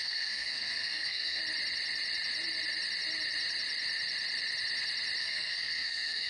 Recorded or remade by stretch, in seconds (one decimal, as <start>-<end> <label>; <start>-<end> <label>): 0.0-1.4 remade; 1.4-5.2 recorded; 5.2-6.3 remade